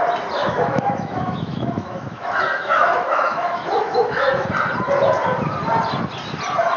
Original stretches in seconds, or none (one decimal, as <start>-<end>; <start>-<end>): 0.0-0.4; 4.5-6.8